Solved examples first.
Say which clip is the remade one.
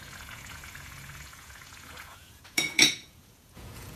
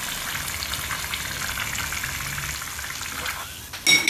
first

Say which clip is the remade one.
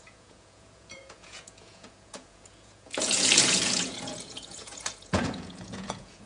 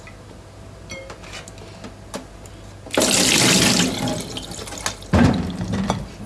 first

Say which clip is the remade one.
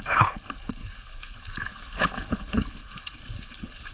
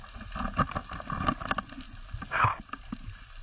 first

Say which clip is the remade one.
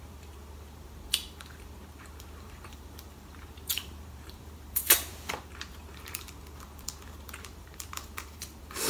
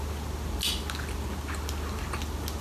first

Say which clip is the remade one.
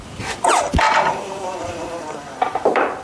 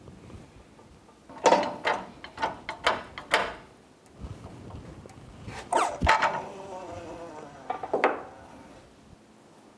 first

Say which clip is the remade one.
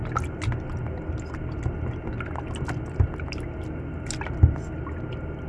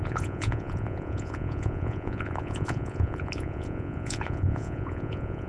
second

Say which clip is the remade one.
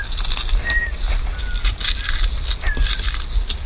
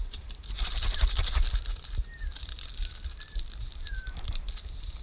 second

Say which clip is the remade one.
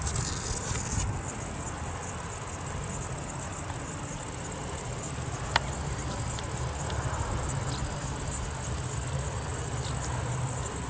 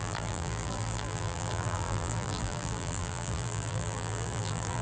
second